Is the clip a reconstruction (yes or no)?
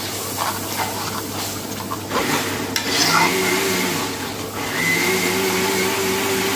no